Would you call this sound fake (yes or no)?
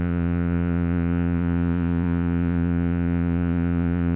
yes